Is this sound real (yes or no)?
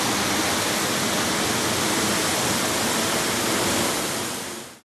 yes